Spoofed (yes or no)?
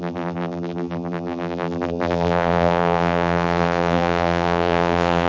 yes